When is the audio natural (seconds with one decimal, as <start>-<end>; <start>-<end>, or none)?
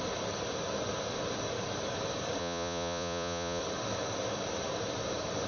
0.0-2.4; 3.6-5.5